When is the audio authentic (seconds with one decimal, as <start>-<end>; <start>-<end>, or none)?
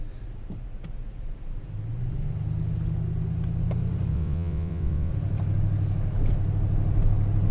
0.0-4.1; 5.1-7.5